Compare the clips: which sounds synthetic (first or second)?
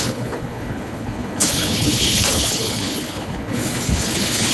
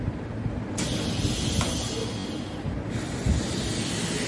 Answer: first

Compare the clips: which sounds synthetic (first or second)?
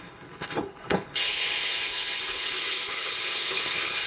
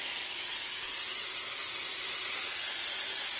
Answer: first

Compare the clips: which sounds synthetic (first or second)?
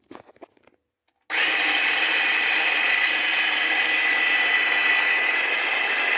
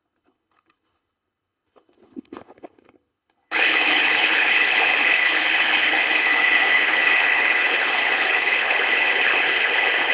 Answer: second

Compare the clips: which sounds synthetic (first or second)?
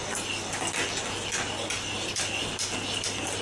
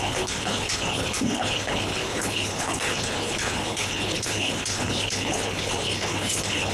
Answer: second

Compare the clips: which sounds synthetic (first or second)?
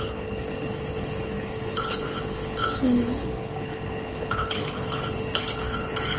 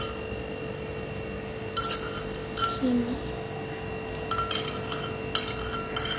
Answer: first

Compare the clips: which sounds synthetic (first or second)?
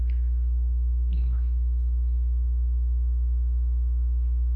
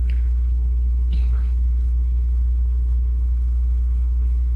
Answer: second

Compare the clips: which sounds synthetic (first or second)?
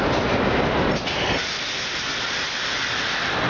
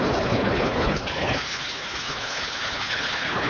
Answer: second